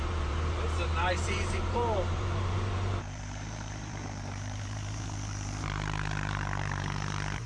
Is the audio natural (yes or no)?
no